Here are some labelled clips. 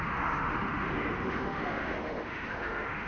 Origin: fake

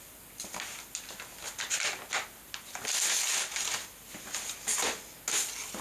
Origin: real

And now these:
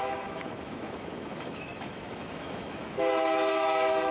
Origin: fake